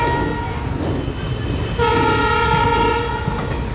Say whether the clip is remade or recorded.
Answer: recorded